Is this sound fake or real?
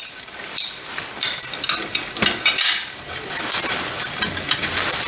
real